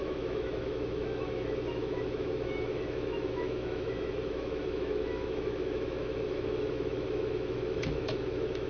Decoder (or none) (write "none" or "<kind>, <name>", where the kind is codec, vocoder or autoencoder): autoencoder, DAC-VAE